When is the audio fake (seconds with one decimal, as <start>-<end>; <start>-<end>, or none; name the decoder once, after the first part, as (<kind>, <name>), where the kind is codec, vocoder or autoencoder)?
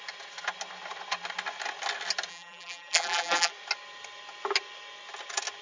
2.3-3.5 (vocoder, BigVGAN v2)